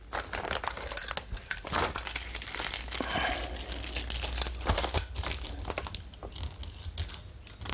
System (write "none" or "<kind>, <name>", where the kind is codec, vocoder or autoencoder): none